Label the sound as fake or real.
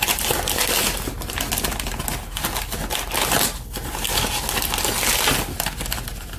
real